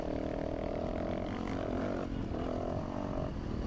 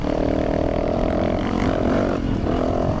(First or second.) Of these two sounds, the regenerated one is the second